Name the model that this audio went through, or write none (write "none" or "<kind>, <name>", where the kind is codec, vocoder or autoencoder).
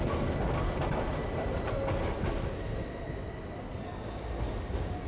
none